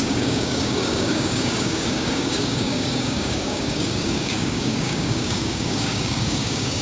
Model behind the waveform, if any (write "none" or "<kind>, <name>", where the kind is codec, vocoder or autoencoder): codec, DAC